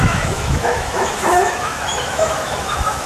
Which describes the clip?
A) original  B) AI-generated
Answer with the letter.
B